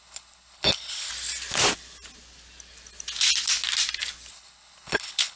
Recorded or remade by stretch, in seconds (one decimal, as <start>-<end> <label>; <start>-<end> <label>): 0.0-1.1 remade; 1.1-4.3 recorded; 4.3-5.4 remade